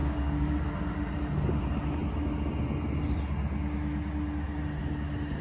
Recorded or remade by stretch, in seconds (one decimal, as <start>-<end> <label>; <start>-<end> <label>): 0.0-0.6 remade; 0.6-5.4 recorded